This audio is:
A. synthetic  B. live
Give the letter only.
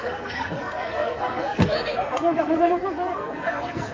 A